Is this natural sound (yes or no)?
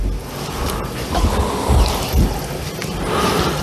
yes